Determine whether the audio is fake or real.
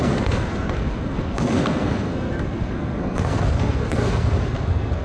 fake